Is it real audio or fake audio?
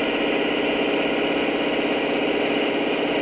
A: real